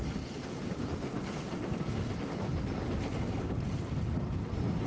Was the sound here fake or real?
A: real